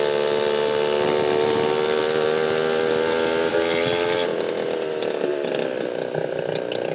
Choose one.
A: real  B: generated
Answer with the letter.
A